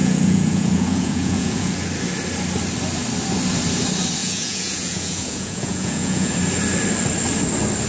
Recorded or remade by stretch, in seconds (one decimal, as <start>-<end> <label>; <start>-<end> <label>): 0.0-1.7 remade; 1.7-4.2 recorded; 4.2-6.3 remade; 6.3-7.9 recorded